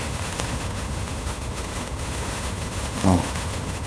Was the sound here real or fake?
fake